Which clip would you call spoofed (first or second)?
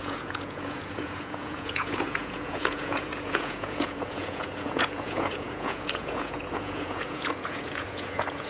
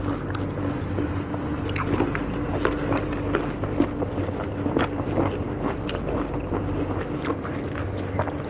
first